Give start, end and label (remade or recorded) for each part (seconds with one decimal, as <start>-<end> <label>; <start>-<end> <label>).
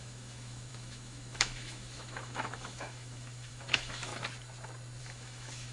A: 0.0-4.1 remade; 4.1-5.0 recorded; 5.0-5.7 remade